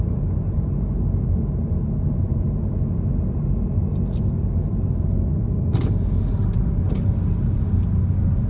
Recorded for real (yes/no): yes